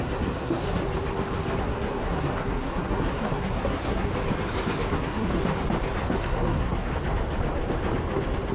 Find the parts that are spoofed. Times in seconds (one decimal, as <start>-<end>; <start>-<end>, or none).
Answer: 0.0-0.8; 1.6-4.1; 4.9-5.4; 6.2-6.9